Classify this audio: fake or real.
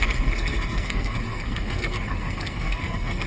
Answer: fake